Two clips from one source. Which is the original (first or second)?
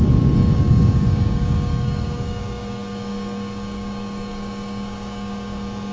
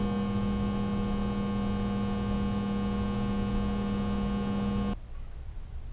second